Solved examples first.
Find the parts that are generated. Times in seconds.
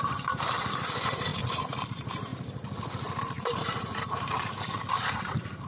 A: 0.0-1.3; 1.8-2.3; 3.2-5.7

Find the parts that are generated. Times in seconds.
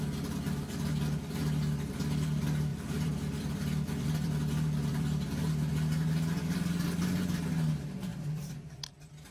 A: 2.7-5.7; 8.1-9.3